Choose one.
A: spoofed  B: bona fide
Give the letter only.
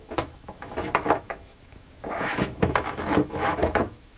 A